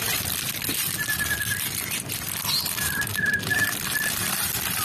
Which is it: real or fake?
real